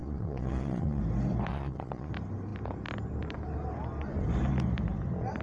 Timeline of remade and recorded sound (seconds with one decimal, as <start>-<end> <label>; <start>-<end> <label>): 0.0-1.0 remade; 1.0-1.5 recorded; 1.5-2.1 remade; 2.1-5.4 recorded